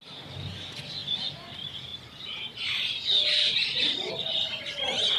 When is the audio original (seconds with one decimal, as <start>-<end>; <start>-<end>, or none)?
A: 0.0-5.2